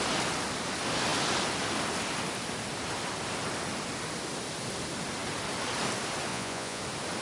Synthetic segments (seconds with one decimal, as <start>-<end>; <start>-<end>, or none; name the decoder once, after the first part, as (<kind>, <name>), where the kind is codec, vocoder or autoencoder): 6.3-6.8 (vocoder, Vocos)